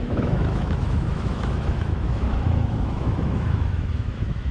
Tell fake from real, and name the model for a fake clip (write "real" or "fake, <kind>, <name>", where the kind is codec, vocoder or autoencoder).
fake, autoencoder, DAC-VAE